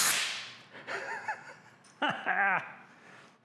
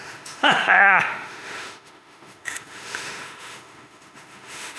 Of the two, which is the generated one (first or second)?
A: second